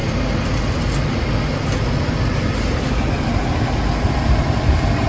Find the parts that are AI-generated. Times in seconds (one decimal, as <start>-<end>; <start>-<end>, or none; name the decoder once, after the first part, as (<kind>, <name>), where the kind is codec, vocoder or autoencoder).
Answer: none